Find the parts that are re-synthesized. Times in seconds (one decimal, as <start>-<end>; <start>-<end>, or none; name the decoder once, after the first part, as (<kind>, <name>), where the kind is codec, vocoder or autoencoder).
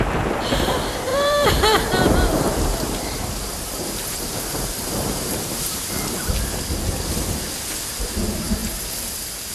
1.1-5.8 (vocoder, BigVGAN v2)